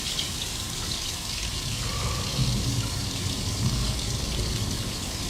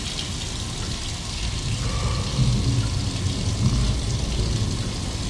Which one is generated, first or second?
first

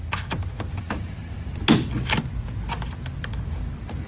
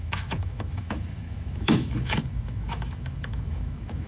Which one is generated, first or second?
second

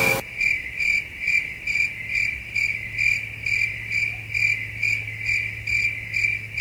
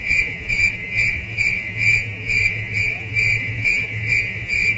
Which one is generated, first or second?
second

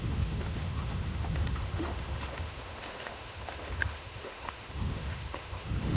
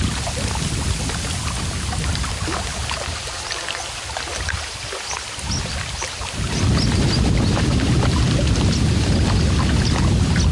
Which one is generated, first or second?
first